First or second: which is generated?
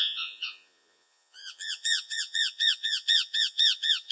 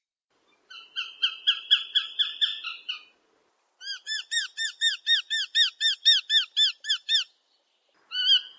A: first